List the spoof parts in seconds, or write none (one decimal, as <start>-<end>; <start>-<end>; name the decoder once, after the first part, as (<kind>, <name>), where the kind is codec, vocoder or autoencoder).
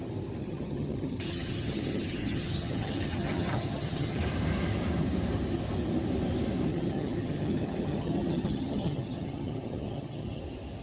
0.4-4.2 (vocoder, HiFi-GAN); 6.7-10.4